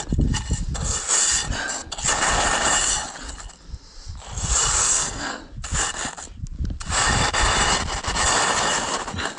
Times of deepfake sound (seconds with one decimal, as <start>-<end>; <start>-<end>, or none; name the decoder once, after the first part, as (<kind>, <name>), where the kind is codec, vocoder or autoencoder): 4.8-5.4 (codec, SNAC)